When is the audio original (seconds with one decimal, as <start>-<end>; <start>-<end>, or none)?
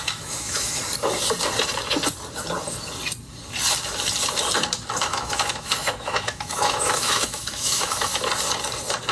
0.8-5.0; 8.1-9.1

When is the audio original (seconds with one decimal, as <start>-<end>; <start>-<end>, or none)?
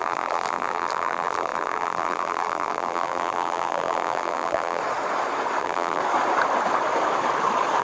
4.8-5.6; 6.0-7.8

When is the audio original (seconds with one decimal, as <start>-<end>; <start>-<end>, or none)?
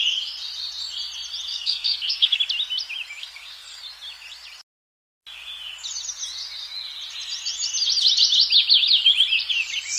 0.0-1.5; 2.4-3.2; 3.8-10.0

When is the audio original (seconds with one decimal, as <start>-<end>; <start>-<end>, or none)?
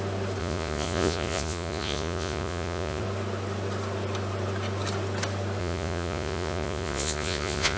0.0-0.4; 3.0-5.6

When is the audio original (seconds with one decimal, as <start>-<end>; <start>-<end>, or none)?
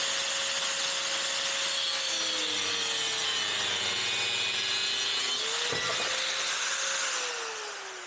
0.0-8.1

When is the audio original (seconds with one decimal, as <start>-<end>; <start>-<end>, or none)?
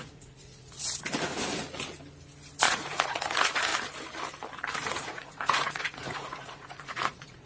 0.8-2.7; 3.7-5.0